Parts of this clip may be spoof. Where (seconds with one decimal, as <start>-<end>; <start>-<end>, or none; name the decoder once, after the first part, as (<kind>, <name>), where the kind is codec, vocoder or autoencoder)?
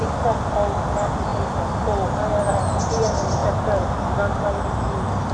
none